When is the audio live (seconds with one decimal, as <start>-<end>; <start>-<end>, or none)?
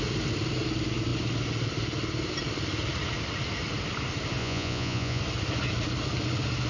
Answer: 0.0-4.4; 5.2-6.7